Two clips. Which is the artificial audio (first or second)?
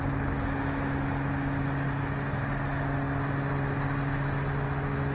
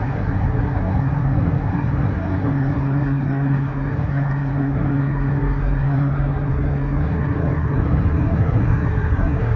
second